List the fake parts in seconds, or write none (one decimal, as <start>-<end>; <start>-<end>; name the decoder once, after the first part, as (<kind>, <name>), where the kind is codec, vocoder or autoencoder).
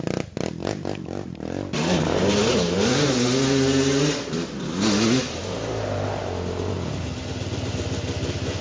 0.6-3.1 (vocoder, BigVGAN v2); 5.4-6.2